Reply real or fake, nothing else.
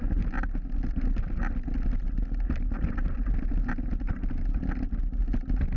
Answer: real